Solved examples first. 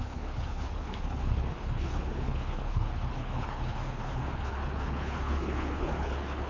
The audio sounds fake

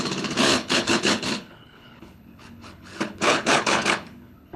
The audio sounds fake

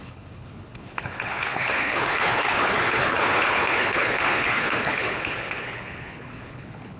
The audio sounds fake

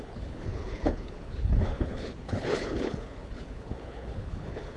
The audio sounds fake